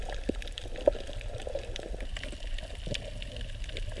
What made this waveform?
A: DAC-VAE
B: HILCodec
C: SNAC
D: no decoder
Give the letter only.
D